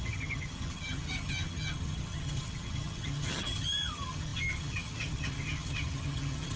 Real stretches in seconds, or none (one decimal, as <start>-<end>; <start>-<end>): none